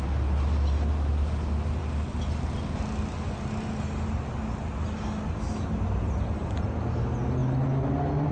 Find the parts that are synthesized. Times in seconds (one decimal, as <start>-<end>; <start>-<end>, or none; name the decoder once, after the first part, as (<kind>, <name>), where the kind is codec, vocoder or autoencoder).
none